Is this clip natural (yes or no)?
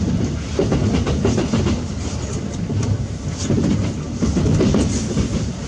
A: no